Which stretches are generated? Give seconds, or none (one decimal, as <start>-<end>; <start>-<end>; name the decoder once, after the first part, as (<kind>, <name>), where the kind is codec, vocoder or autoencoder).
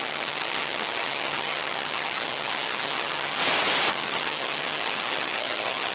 0.0-3.4 (vocoder, HiFi-GAN); 3.9-5.9